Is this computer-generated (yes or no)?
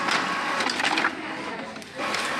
no